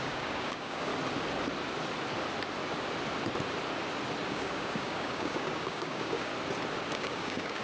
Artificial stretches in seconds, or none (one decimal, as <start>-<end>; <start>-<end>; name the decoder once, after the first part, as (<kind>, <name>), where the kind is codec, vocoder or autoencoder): 0.0-0.9 (codec, DAC); 4.3-6.3; 6.9-7.6